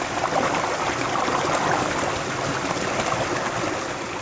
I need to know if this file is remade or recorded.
recorded